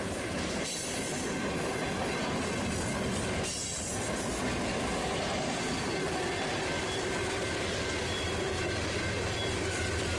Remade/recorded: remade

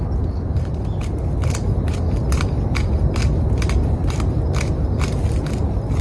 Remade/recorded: recorded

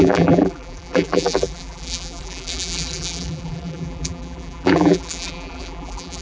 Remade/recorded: remade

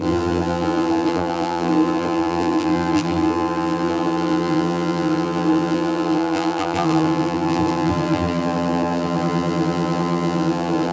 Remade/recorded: remade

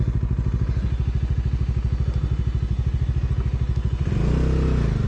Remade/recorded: recorded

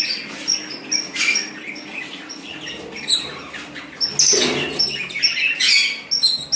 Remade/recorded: recorded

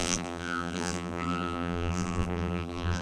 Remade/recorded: remade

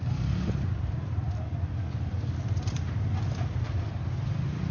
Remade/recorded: recorded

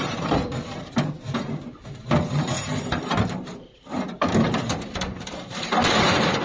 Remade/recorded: remade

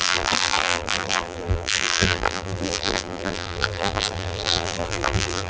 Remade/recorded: remade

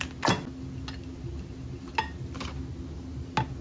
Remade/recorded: recorded